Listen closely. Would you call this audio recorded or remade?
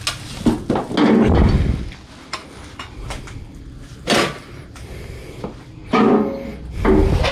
recorded